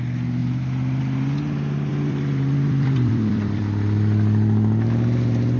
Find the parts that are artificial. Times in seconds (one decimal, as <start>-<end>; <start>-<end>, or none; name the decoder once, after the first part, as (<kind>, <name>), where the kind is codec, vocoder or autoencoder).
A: 1.9-5.6 (vocoder, BigVGAN v2)